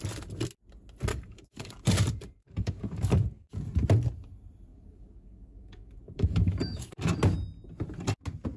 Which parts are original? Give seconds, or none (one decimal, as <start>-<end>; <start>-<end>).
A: 0.0-1.1; 1.7-2.4; 3.5-4.7; 7.0-8.6